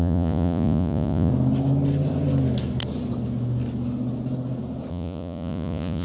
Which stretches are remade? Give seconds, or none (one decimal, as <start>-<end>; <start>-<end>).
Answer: 0.0-1.3; 4.9-6.0